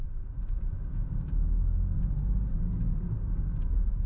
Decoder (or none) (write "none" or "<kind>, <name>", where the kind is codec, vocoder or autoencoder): none